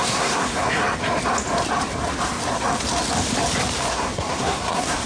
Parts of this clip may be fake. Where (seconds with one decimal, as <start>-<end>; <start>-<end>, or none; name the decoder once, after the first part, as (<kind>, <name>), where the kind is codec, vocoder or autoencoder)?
0.0-0.8 (codec, SNAC); 3.9-5.1